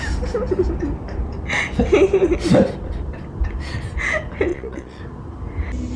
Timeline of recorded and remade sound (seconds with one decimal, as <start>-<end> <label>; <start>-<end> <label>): 0.0-4.5 recorded; 4.5-5.0 remade; 5.0-6.0 recorded